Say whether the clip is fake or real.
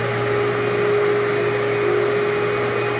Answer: real